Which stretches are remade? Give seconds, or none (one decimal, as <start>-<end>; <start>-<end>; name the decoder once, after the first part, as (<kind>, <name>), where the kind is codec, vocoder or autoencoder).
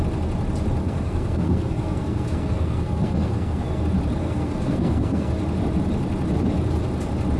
0.8-3.8 (codec, SNAC); 4.2-5.3